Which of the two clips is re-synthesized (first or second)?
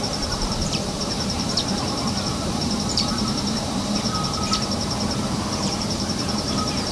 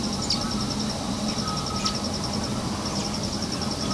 first